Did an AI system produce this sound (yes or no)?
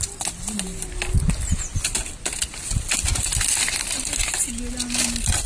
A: no